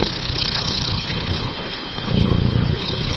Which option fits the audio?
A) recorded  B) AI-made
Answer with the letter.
B